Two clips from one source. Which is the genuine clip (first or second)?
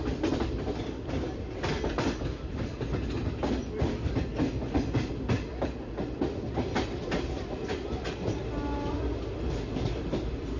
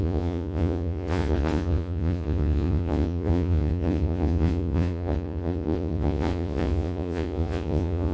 first